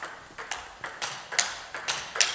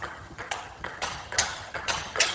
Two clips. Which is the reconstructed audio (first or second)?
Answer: second